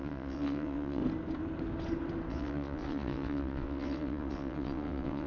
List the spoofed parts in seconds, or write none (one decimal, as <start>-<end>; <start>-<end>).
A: 0.0-1.0; 2.3-5.3